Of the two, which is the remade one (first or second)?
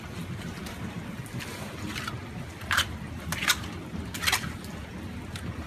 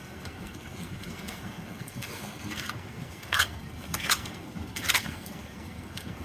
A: second